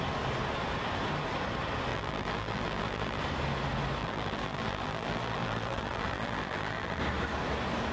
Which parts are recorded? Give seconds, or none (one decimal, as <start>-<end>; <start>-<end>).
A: 0.0-1.9; 3.2-4.0; 7.0-7.9